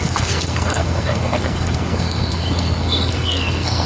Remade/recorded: remade